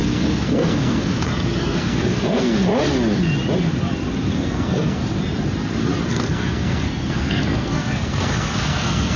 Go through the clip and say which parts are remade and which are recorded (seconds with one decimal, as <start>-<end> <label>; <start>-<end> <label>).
0.0-2.7 remade; 2.7-4.3 recorded; 4.3-5.0 remade; 5.0-6.1 recorded; 6.1-9.2 remade